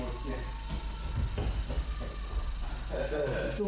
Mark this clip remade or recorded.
recorded